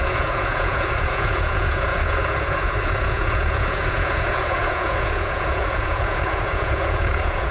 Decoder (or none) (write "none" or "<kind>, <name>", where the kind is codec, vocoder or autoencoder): vocoder, Vocos